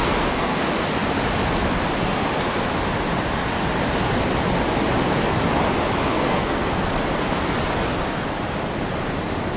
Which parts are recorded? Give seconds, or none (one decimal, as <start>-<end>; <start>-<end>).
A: 0.6-6.1; 6.9-9.6

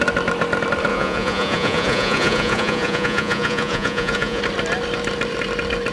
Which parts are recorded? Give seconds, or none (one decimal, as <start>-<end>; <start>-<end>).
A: 0.0-0.9; 4.4-5.9

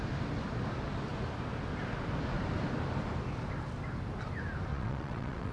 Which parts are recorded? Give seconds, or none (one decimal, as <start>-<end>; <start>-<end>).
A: 0.0-4.7

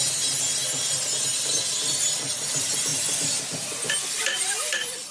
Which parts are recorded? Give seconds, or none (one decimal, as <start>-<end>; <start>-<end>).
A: 0.0-5.1

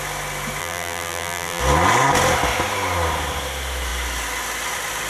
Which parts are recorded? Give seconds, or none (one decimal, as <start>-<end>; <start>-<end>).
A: 0.0-0.6; 1.6-5.1